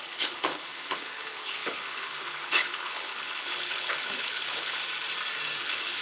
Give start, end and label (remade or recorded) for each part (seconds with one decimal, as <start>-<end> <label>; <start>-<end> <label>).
0.0-4.8 remade; 4.8-5.6 recorded; 5.6-6.0 remade

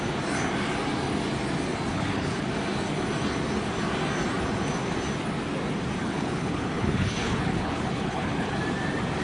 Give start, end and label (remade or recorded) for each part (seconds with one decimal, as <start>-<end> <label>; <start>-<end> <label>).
0.0-1.9 recorded; 1.9-2.5 remade; 2.5-6.0 recorded; 6.0-8.6 remade; 8.6-9.2 recorded

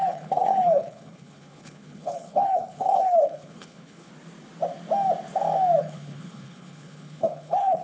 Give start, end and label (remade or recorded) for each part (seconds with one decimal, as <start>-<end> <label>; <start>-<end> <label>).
0.0-4.1 remade; 4.1-5.8 recorded; 5.8-7.8 remade

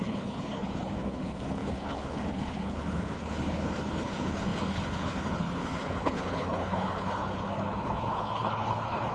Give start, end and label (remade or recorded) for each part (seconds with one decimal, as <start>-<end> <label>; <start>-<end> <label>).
0.0-9.1 remade

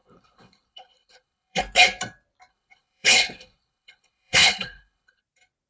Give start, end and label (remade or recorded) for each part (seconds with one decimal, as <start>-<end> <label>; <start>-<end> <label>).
0.0-1.6 remade; 1.6-2.5 recorded; 2.5-5.2 remade; 5.2-5.7 recorded